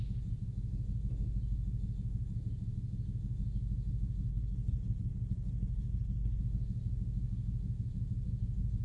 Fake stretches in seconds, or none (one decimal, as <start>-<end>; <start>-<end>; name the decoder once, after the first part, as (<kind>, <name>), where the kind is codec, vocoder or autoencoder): 4.3-6.4 (codec, HILCodec)